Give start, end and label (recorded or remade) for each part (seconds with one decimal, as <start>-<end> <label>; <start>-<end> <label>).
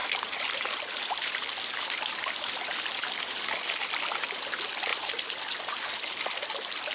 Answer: 0.0-4.1 remade; 4.1-4.9 recorded; 4.9-5.9 remade; 5.9-6.9 recorded